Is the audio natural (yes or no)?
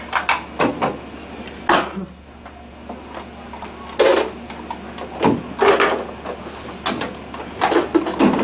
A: yes